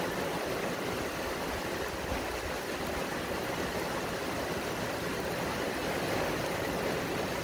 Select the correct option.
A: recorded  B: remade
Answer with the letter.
A